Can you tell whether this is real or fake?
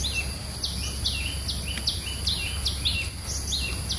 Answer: real